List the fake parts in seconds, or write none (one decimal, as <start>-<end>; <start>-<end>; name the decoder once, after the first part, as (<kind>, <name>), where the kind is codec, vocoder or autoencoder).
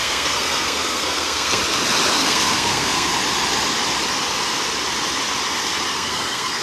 0.0-1.6 (codec, SNAC); 2.2-3.1; 5.9-6.6